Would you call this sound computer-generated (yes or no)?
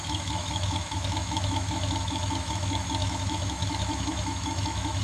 yes